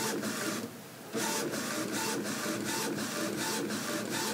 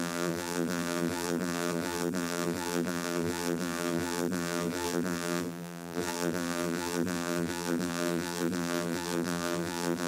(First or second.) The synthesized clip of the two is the second